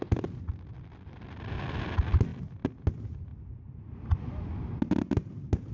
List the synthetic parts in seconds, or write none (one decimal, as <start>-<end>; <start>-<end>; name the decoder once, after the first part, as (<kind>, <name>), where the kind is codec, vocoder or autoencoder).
none